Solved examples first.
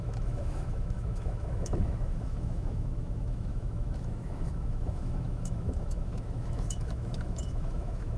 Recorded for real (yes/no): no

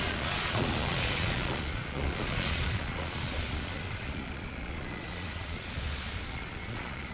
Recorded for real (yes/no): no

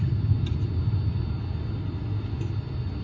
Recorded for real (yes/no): yes